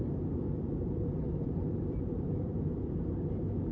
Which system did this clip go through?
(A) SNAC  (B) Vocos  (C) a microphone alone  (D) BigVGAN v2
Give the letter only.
D